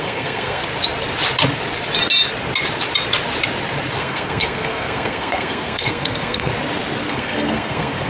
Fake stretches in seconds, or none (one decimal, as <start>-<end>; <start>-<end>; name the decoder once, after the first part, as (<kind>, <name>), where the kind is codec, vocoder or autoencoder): 0.0-0.6 (codec, SNAC); 4.0-6.5; 7.1-8.1

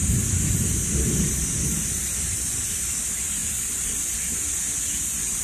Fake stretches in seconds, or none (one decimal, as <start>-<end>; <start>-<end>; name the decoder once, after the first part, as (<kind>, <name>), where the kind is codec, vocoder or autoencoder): 3.4-5.4 (vocoder, BigVGAN v2)

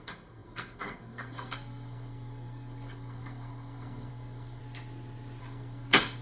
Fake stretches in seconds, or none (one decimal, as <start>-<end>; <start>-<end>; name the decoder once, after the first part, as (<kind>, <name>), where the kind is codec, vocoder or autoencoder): 0.0-4.6 (codec, SNAC); 5.4-6.2